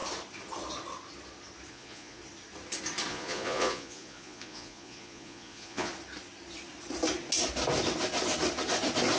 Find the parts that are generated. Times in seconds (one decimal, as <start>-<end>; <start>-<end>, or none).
1.7-2.2; 3.1-5.9